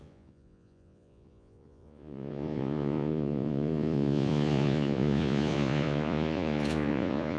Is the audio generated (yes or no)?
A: yes